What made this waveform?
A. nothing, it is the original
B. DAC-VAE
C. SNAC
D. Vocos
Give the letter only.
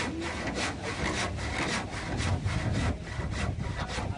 A